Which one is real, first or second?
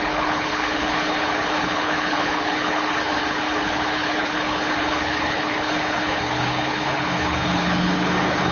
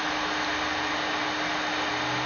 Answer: second